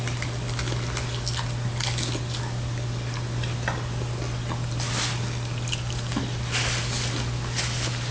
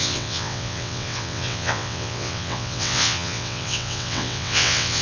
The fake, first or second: second